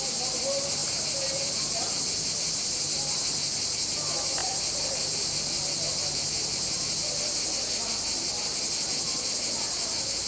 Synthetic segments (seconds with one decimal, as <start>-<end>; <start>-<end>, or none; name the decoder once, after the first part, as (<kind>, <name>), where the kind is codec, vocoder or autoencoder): 4.4-5.9 (vocoder, BigVGAN v2)